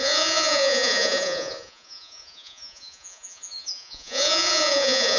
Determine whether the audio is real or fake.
fake